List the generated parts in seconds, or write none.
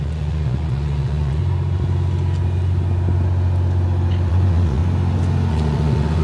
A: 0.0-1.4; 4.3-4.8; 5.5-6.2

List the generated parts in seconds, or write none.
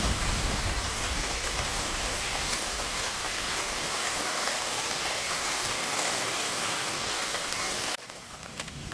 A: 0.0-8.9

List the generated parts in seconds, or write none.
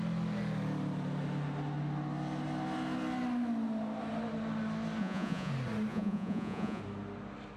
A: 5.0-5.5; 5.9-6.8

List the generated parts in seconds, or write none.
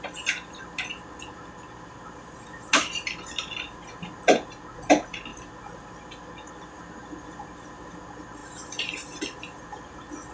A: none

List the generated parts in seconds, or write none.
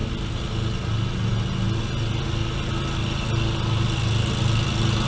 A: none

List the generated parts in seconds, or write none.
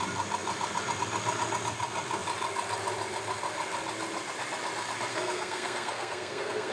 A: 5.1-6.7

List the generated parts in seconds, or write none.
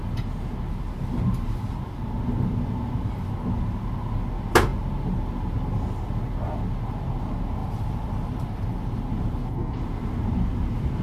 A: 7.6-9.0